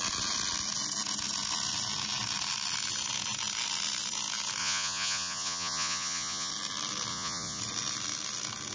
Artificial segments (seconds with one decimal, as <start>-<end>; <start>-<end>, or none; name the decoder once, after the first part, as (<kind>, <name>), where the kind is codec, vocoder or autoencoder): 4.6-6.5 (vocoder, Vocos); 7.1-7.6